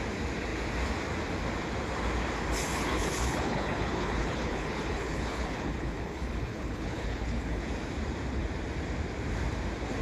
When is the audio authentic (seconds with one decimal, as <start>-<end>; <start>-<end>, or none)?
0.0-2.7; 7.6-10.0